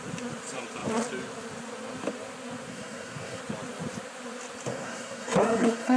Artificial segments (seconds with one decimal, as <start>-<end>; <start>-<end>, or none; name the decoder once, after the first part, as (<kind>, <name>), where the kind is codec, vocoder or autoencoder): 2.7-3.4 (codec, SNAC); 4.7-6.0